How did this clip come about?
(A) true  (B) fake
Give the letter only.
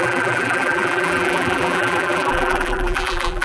B